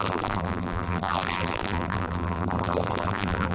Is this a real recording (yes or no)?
no